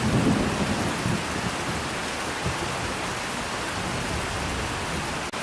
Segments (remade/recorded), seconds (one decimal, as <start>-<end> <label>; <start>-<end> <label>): 0.0-5.4 recorded